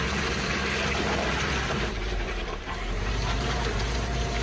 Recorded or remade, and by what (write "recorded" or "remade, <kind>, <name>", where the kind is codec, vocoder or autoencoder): remade, vocoder, BigVGAN v2